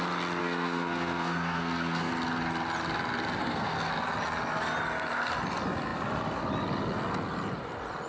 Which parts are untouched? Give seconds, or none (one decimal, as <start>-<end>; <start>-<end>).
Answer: 0.0-0.4; 2.1-3.4; 3.9-8.1